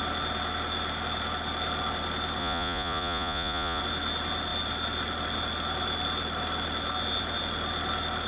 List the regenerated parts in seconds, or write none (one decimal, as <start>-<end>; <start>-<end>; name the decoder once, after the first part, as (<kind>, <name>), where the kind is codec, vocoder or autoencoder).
2.4-3.8 (vocoder, Vocos)